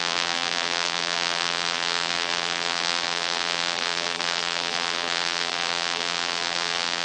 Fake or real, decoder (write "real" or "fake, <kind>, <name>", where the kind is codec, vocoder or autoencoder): fake, vocoder, BigVGAN v2